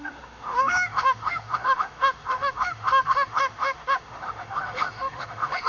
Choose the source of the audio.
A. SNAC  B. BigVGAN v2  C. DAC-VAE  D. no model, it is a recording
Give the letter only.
C